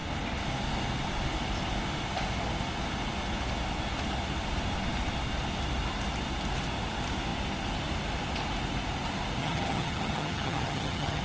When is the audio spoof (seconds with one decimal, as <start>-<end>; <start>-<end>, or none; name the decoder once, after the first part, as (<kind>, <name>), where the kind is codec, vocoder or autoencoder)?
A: 9.4-11.2 (vocoder, HiFi-GAN)